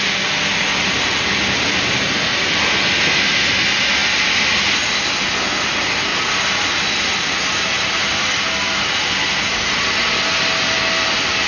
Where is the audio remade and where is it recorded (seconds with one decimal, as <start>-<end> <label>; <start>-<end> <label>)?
0.0-0.7 recorded; 0.7-1.2 remade; 1.2-4.0 recorded; 4.0-5.3 remade; 5.3-6.1 recorded; 6.1-8.3 remade; 8.3-11.5 recorded